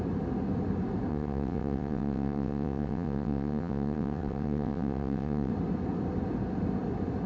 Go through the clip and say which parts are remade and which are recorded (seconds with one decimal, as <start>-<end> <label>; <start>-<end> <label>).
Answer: 0.0-1.1 recorded; 1.1-5.5 remade; 5.5-7.3 recorded